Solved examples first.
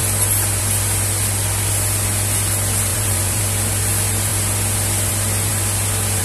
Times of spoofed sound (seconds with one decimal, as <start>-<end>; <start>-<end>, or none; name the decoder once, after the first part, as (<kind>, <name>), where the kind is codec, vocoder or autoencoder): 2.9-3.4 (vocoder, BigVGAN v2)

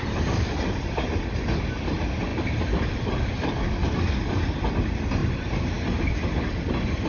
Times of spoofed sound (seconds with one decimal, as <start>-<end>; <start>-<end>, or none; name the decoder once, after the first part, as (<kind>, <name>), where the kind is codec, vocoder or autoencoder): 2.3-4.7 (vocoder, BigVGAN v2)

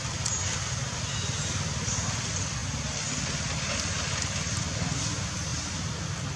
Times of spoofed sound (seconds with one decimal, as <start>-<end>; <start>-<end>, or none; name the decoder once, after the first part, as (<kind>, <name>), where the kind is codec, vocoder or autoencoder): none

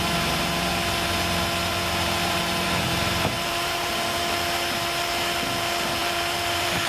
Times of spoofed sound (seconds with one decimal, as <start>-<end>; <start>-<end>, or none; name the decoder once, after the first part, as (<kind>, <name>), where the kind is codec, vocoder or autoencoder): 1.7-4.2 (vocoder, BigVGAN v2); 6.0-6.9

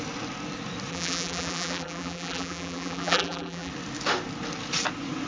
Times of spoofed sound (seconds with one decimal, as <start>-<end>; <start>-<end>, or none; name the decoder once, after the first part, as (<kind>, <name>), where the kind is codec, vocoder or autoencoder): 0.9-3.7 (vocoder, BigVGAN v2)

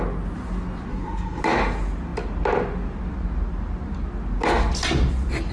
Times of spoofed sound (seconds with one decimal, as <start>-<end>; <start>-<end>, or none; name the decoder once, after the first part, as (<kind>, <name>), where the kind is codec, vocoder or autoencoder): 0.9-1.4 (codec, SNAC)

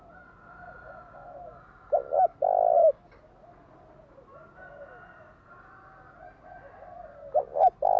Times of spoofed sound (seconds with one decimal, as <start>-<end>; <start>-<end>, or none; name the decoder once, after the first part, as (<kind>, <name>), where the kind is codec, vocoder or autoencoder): none

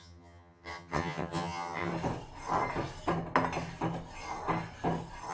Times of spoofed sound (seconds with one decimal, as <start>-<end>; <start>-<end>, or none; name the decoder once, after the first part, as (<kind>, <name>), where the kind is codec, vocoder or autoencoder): 0.0-1.9 (vocoder, HiFi-GAN)